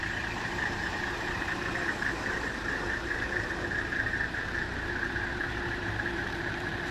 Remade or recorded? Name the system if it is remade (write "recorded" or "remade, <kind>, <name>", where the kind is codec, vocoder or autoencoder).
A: remade, vocoder, BigVGAN v2